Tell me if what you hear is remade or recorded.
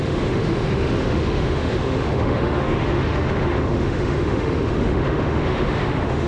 remade